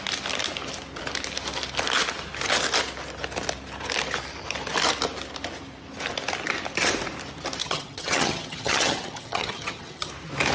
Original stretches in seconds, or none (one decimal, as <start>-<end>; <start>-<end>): 0.0-7.6; 10.1-10.5